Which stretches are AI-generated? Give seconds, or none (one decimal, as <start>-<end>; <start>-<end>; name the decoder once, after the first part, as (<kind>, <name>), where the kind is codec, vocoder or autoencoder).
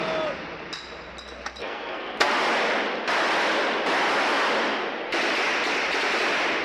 1.6-2.3 (codec, SNAC)